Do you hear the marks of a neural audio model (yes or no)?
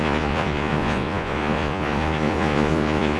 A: yes